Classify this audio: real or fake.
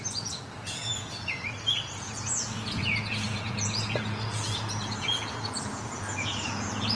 fake